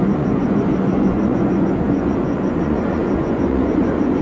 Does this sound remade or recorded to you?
remade